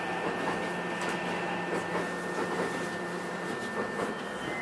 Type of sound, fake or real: real